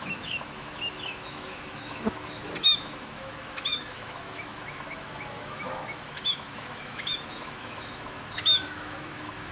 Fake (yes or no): yes